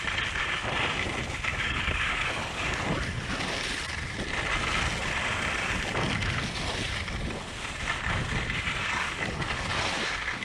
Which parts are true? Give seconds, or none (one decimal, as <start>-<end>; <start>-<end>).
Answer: 0.0-1.5; 2.8-8.8; 9.6-10.4